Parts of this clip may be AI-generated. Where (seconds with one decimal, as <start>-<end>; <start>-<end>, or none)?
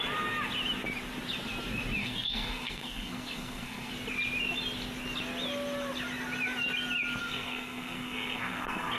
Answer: 2.0-3.9; 7.2-9.0